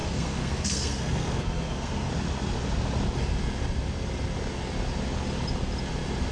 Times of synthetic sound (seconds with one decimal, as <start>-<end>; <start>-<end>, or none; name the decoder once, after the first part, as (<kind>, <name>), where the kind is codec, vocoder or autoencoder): 0.0-2.1 (codec, SNAC)